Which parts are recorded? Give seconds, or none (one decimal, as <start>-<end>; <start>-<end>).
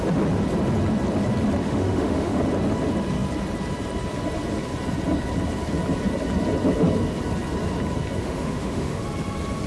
0.0-1.6; 2.4-8.2; 9.0-9.7